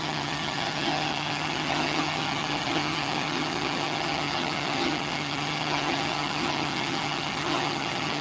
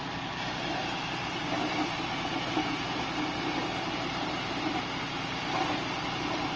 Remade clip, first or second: first